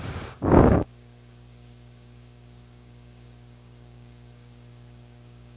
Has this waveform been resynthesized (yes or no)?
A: yes